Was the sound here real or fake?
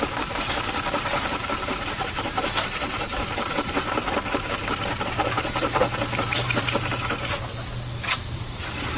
fake